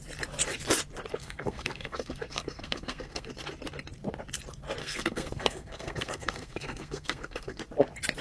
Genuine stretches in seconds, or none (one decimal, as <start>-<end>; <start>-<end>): 0.0-1.2; 3.3-4.8; 7.6-8.2